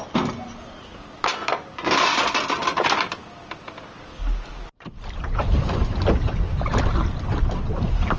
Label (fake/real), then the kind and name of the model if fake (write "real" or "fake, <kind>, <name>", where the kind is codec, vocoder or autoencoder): real